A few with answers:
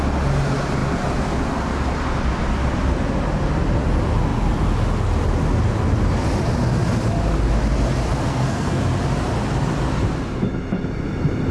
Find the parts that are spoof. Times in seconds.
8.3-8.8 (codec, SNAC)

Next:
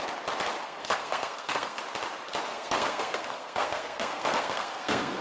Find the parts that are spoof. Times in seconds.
0.6-1.8 (codec, SNAC); 2.5-5.2

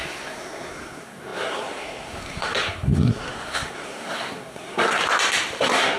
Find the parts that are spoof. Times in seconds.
0.0-5.0 (codec, SNAC); 5.6-6.0

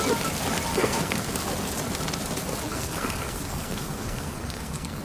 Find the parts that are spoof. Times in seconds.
0.7-1.3 (codec, SNAC); 2.7-5.0